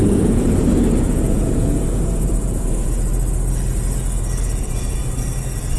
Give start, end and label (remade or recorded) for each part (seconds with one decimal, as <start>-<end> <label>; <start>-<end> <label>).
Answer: 0.0-3.1 remade; 3.1-4.4 recorded; 4.4-5.0 remade; 5.0-5.8 recorded